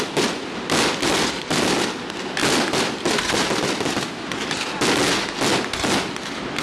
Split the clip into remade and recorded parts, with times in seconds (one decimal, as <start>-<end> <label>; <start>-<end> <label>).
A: 0.0-6.6 recorded